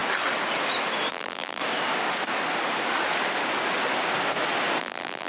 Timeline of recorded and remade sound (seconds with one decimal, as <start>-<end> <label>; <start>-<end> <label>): 0.0-1.1 recorded; 1.1-1.6 remade; 1.6-4.8 recorded; 4.8-5.3 remade